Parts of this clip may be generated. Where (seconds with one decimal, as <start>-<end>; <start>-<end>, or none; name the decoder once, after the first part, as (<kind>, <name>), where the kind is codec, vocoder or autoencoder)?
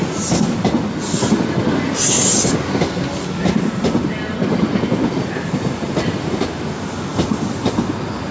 none